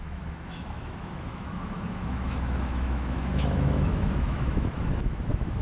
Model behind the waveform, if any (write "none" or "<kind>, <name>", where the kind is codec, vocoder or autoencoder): autoencoder, DAC-VAE